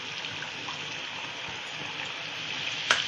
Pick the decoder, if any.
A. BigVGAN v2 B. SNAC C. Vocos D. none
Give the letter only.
D